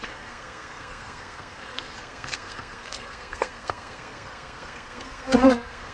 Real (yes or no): no